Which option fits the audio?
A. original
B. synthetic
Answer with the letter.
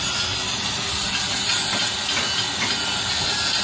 A